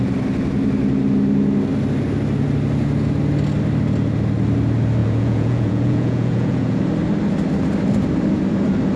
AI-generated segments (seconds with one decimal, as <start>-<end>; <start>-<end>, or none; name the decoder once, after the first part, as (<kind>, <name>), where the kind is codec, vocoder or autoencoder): 5.0-6.8 (vocoder, Vocos)